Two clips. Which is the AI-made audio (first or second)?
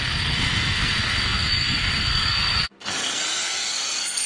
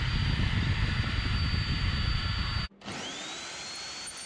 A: first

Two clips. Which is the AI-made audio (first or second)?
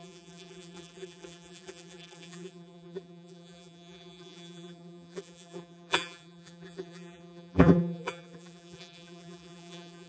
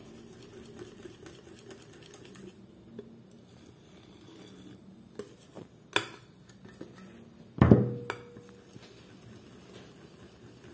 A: first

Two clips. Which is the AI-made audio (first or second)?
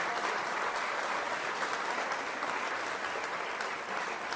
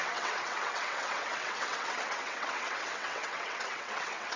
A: second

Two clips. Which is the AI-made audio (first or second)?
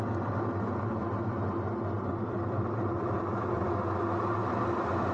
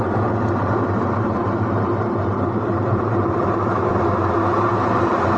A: second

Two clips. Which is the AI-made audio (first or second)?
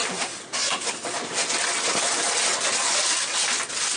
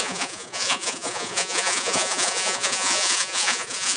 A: second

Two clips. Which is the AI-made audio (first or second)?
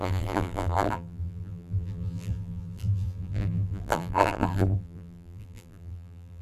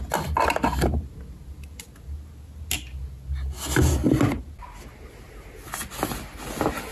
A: first